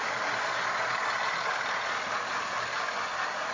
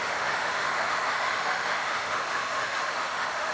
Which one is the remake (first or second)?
second